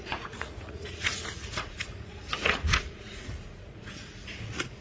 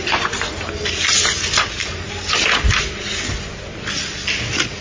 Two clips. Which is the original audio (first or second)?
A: second